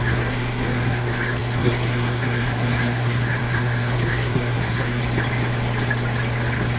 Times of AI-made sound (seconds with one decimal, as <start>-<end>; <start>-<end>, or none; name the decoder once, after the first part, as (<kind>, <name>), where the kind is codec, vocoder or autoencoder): 0.0-5.0 (codec, SNAC)